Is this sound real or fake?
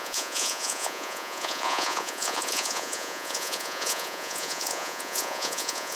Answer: fake